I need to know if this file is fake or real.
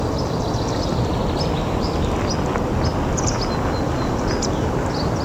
real